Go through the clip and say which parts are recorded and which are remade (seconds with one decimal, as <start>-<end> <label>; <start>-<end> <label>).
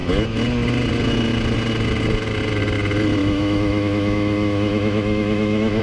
0.0-3.2 recorded; 3.2-5.8 remade